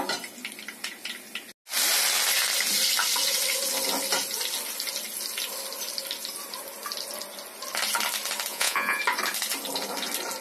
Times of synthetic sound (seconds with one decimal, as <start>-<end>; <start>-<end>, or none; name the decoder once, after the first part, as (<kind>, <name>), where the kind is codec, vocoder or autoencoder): 8.5-9.0 (vocoder, Vocos)